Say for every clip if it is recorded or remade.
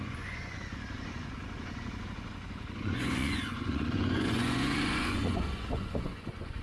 remade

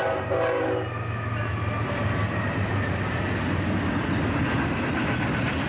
recorded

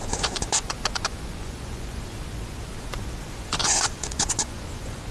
remade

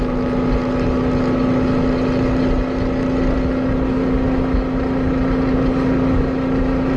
recorded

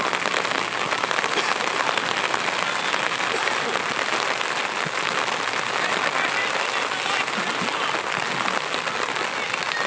recorded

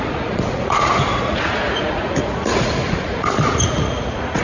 remade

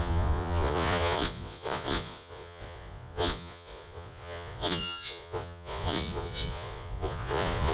remade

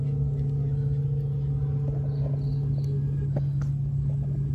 recorded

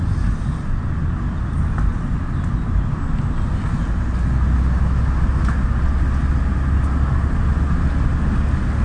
recorded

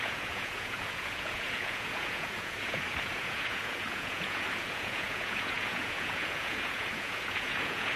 remade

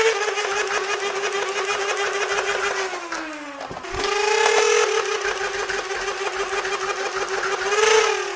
recorded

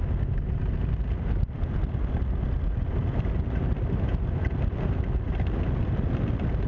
recorded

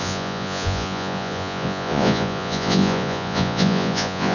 remade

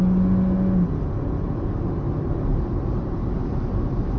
recorded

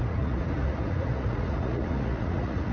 remade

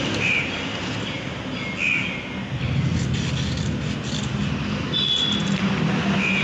recorded